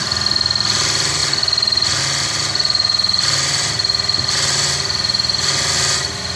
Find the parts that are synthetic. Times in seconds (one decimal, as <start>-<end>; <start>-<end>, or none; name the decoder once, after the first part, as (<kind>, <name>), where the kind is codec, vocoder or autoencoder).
none